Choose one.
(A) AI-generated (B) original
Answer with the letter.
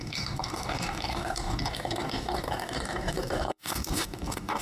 A